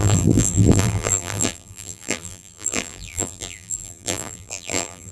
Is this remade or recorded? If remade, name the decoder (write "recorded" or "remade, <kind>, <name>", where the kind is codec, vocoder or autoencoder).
remade, vocoder, BigVGAN v2